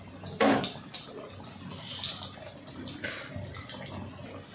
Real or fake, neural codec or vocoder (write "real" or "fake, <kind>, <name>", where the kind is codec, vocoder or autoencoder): real